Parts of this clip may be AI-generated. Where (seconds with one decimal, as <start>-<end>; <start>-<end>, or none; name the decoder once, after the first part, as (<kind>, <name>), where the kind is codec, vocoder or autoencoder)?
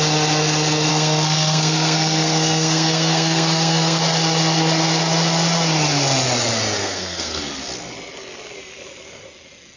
0.9-4.0 (codec, SNAC); 6.8-7.4